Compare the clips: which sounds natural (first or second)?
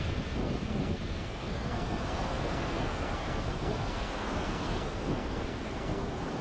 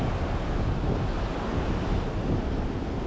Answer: second